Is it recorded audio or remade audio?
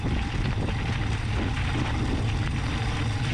recorded